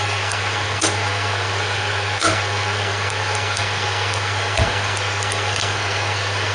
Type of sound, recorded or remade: remade